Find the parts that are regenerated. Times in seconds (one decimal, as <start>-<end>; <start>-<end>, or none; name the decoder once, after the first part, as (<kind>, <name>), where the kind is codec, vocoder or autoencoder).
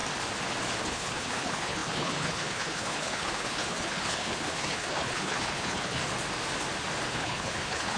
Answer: 0.8-6.0 (codec, HILCodec); 7.1-8.0